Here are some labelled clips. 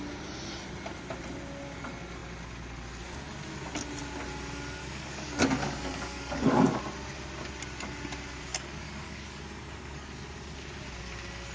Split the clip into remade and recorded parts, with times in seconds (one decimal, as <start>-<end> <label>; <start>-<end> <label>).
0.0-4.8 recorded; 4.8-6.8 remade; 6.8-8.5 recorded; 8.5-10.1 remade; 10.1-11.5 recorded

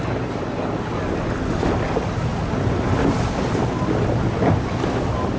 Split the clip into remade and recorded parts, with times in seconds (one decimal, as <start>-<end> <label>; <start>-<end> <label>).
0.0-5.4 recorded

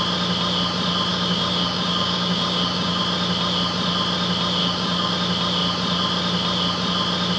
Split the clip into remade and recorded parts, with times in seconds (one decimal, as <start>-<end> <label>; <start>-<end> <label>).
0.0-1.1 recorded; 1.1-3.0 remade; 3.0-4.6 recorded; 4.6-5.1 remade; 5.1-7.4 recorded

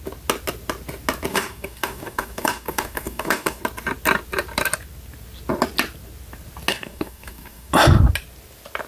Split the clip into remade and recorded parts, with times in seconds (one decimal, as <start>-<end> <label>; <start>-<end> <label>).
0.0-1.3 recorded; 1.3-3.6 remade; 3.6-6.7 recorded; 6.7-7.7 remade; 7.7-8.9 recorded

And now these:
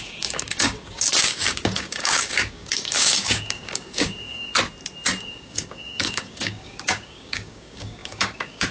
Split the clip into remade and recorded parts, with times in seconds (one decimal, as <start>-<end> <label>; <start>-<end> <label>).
0.0-4.5 remade; 4.5-5.2 recorded; 5.2-8.7 remade

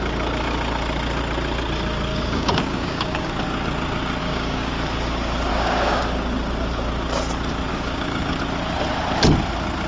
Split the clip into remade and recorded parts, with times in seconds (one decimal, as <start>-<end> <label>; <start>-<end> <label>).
0.0-2.1 recorded; 2.1-3.3 remade; 3.3-4.2 recorded; 4.2-4.7 remade; 4.7-5.5 recorded; 5.5-6.0 remade; 6.0-7.7 recorded; 7.7-8.4 remade; 8.4-9.9 recorded

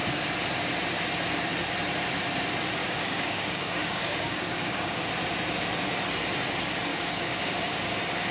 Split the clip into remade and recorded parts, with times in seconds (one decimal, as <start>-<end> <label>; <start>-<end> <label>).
0.0-2.8 recorded; 2.8-5.0 remade; 5.0-6.9 recorded; 6.9-7.6 remade; 7.6-8.3 recorded